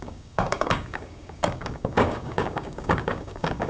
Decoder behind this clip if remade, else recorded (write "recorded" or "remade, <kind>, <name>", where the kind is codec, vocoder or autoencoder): remade, codec, DAC